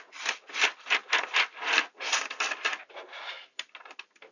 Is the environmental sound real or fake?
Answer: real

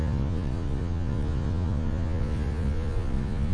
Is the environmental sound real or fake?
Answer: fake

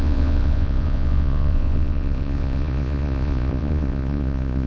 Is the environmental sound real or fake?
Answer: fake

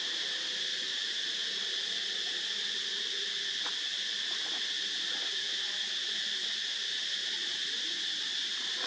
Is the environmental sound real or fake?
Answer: real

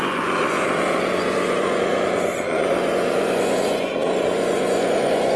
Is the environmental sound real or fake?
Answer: fake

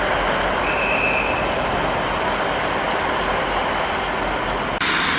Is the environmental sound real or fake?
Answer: real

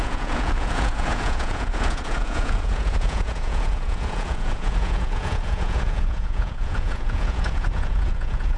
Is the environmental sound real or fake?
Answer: fake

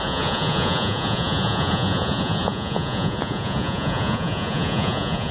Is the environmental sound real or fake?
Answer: fake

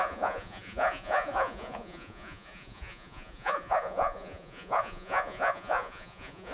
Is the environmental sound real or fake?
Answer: fake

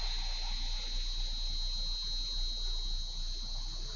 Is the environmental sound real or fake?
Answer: real